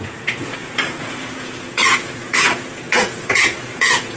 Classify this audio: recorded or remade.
remade